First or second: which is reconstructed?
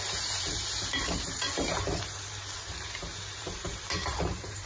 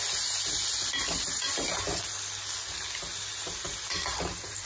first